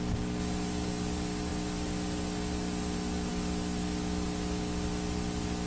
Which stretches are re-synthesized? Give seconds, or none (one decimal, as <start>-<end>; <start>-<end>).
none